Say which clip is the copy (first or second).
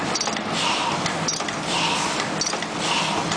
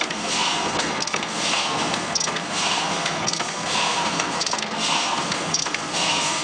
second